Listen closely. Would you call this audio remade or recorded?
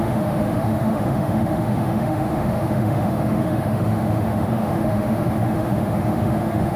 remade